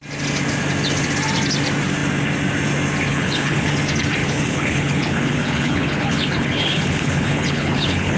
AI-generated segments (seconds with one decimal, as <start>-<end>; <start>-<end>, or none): 3.1-3.7; 4.2-8.2